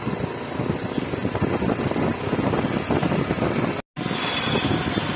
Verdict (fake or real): real